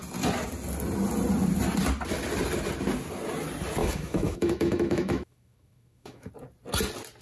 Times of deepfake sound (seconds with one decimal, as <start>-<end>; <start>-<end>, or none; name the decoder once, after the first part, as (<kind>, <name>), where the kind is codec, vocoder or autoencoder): 3.8-6.3 (autoencoder, DAC-VAE)